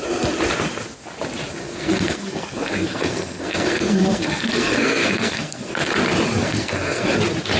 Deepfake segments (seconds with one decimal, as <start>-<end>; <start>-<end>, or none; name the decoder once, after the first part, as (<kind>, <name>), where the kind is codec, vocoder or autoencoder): 1.6-5.9 (codec, SNAC); 6.4-7.1